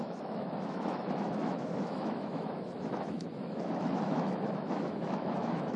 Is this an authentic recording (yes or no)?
no